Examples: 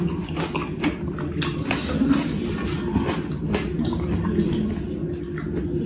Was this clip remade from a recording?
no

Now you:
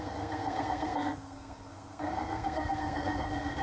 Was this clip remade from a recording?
yes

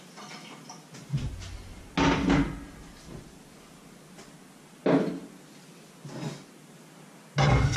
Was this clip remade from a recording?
no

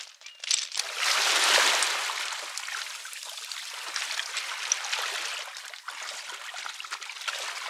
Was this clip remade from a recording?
no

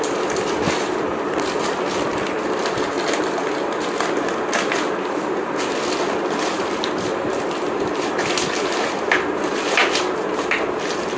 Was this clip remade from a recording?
no